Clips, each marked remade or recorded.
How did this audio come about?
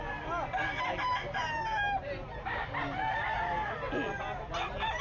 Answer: recorded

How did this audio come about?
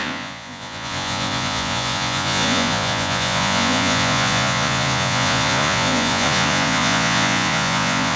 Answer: remade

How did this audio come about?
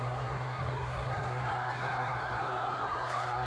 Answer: remade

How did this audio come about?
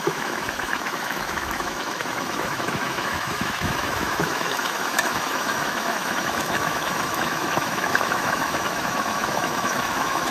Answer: remade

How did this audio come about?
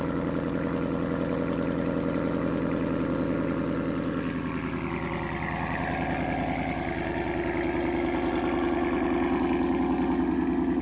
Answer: recorded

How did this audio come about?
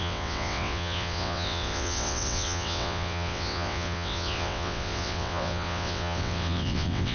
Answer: remade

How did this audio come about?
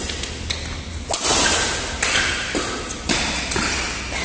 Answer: recorded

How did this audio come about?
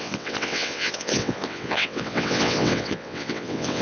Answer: remade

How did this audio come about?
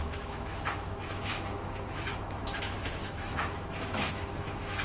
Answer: remade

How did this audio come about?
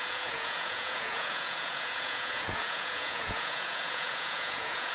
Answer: remade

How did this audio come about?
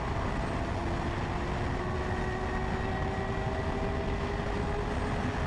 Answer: recorded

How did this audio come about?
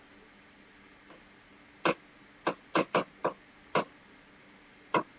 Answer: recorded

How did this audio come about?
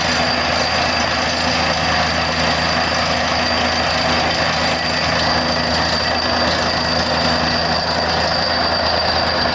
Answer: recorded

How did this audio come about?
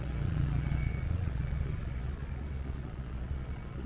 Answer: remade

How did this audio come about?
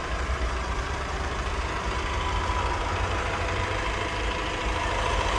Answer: remade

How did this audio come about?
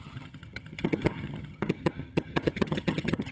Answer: remade